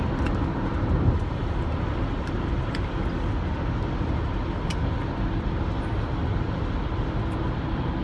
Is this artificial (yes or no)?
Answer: no